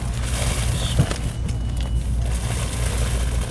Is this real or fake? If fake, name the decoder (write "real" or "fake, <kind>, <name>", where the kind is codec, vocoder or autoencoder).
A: real